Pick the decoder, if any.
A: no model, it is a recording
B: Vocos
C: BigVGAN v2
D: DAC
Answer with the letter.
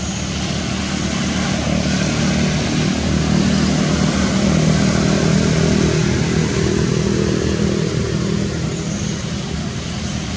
A